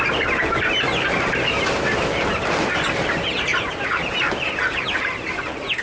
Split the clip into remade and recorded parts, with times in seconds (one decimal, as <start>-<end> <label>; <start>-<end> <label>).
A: 0.0-3.5 recorded; 3.5-4.0 remade; 4.0-5.8 recorded